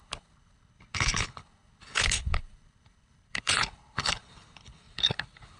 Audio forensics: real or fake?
fake